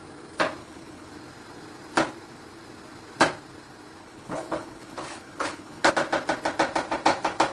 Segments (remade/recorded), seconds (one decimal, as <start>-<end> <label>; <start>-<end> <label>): 0.0-0.6 recorded; 0.6-1.1 remade; 1.1-4.0 recorded; 4.0-5.9 remade; 5.9-7.5 recorded